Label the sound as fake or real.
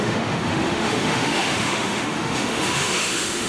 fake